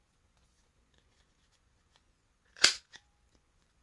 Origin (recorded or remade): remade